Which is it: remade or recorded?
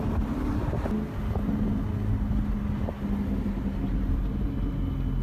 recorded